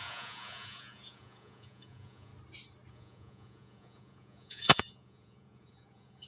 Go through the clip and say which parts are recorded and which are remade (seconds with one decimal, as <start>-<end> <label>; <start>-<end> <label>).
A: 0.0-2.3 remade; 2.3-2.9 recorded; 2.9-6.3 remade